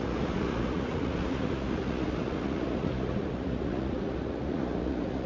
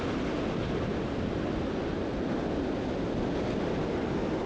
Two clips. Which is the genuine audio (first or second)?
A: second